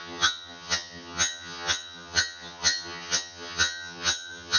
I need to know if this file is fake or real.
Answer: fake